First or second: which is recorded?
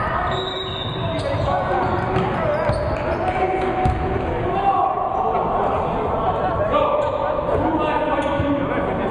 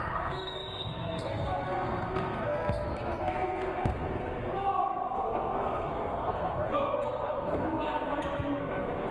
first